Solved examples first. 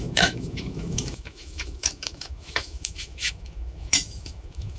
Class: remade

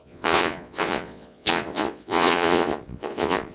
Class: remade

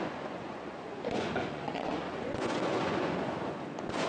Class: remade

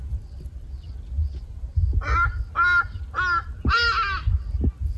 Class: recorded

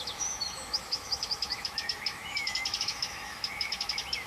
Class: remade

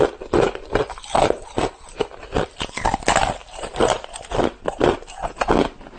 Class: recorded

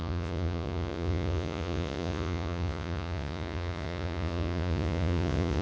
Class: remade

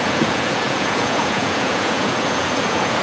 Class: remade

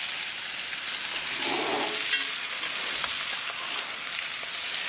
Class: recorded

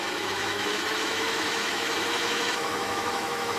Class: remade